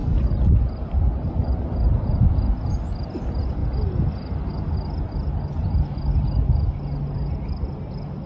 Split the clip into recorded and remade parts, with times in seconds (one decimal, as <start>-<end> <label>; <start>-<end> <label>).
0.0-8.3 recorded